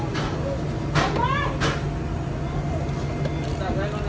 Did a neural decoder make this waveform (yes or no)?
no